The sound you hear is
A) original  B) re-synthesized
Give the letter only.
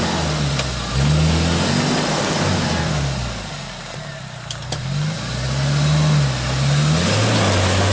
A